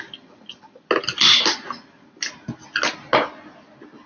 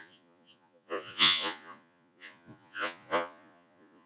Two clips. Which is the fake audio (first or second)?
second